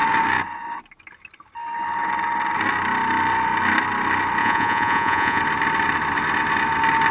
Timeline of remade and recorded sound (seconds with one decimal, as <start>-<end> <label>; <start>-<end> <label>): 0.0-4.4 recorded; 4.4-5.4 remade; 5.4-7.1 recorded